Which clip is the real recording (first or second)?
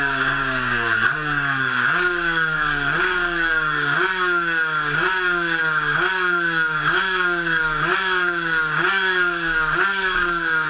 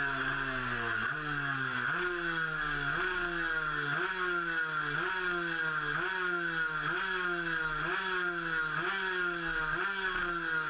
second